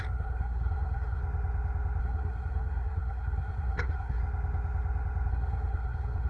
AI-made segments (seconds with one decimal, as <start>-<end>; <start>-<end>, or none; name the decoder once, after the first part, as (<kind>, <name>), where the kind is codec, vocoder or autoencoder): 0.0-1.2 (codec, SNAC); 2.0-4.2; 5.3-6.3